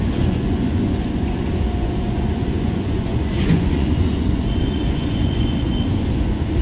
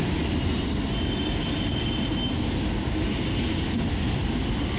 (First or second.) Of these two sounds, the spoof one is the first